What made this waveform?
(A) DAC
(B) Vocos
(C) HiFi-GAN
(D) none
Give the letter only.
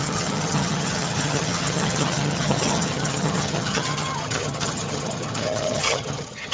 C